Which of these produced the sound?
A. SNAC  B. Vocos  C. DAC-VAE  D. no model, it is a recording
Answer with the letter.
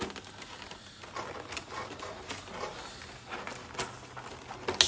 D